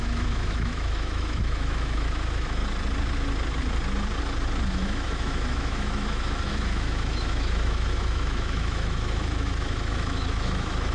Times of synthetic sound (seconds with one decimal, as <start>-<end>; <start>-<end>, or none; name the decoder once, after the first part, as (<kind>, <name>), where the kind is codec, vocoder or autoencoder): 0.0-2.6 (autoencoder, DAC-VAE); 4.7-10.9